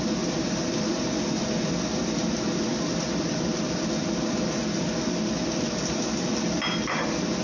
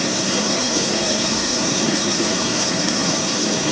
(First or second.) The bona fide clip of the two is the first